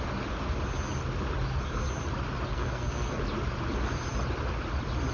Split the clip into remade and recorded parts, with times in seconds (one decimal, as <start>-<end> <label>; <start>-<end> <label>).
0.0-2.5 recorded; 2.5-3.2 remade; 3.2-5.1 recorded